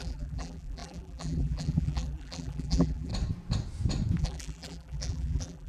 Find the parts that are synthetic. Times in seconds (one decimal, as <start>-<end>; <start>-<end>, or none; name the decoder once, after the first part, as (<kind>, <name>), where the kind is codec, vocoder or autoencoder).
0.0-3.1 (vocoder, BigVGAN v2); 4.2-5.7